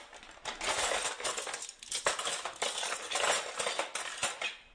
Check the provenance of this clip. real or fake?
real